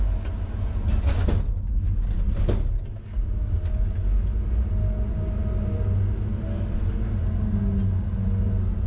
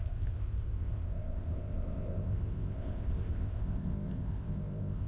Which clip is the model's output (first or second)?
second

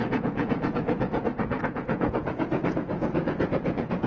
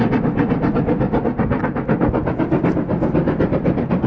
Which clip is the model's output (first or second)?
first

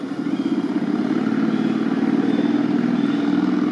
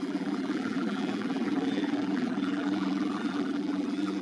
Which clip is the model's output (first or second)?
second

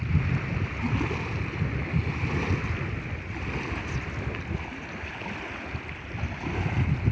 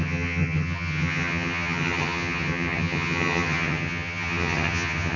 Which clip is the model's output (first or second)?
second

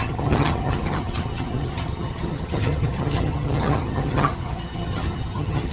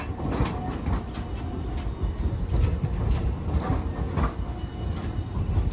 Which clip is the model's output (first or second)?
first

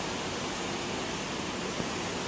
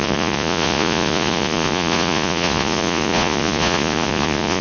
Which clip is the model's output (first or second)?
second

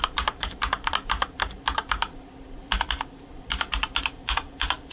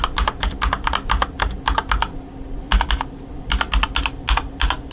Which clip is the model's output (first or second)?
first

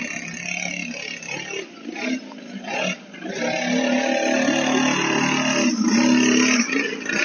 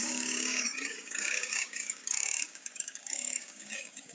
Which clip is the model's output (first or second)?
second